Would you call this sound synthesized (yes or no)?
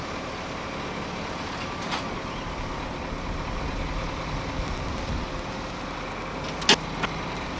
no